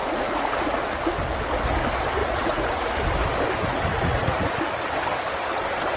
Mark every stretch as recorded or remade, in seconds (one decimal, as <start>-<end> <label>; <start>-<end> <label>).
0.0-0.8 remade; 0.8-2.2 recorded; 2.2-2.9 remade; 2.9-3.9 recorded; 3.9-4.5 remade; 4.5-6.0 recorded